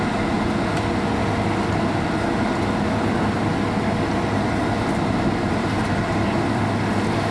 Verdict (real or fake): real